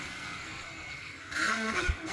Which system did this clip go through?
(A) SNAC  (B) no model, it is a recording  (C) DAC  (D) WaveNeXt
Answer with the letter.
A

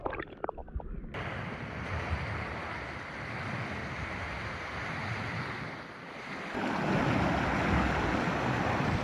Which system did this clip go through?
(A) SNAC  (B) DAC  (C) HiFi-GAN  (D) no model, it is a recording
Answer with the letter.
D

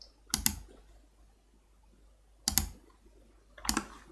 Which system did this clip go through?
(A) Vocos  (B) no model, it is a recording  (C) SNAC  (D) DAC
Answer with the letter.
B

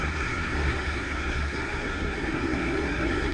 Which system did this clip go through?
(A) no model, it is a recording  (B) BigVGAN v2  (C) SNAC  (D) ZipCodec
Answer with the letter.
C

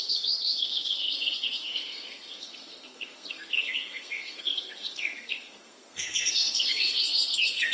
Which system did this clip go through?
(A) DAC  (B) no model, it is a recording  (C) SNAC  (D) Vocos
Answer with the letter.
C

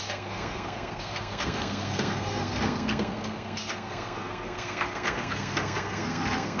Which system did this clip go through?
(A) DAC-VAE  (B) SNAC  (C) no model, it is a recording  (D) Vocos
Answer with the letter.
B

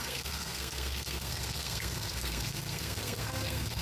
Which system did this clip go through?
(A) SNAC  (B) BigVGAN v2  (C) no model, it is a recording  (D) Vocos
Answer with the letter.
A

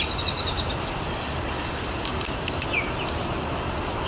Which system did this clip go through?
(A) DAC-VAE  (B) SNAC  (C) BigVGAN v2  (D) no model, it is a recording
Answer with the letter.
D